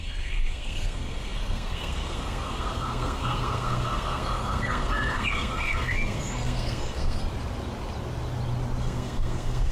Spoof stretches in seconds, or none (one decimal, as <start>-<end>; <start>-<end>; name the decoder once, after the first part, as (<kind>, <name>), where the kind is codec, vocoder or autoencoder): 0.0-7.2 (codec, SNAC); 8.8-9.7